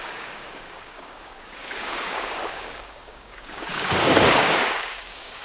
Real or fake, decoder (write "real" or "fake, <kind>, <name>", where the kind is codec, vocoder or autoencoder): fake, codec, DAC